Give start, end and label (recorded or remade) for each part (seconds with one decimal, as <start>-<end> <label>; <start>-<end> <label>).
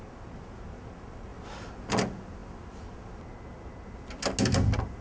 0.0-5.0 recorded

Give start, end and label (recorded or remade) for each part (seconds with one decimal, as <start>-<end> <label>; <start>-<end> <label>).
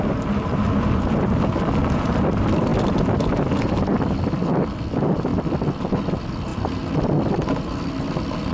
0.0-8.5 recorded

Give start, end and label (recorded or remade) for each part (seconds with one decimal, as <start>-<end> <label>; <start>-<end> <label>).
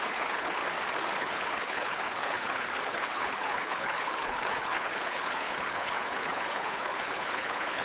0.0-0.6 remade; 0.6-1.2 recorded; 1.2-7.8 remade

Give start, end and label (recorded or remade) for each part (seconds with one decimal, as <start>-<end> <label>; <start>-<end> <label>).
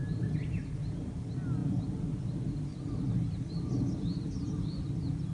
0.0-5.3 recorded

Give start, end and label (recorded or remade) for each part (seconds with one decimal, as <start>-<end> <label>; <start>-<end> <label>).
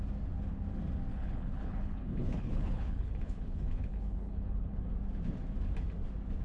0.0-1.1 recorded; 1.1-4.9 remade; 4.9-6.4 recorded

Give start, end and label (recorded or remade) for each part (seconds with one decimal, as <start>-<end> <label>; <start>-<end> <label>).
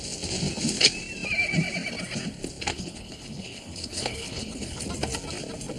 0.0-2.7 recorded; 2.7-4.8 remade; 4.8-5.8 recorded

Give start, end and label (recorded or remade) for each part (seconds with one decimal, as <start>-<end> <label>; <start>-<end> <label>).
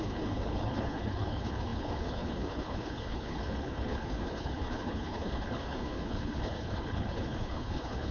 0.0-8.1 remade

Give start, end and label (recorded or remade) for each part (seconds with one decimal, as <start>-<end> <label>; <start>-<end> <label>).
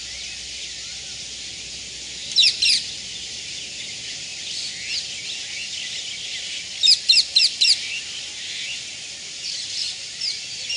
0.0-10.8 recorded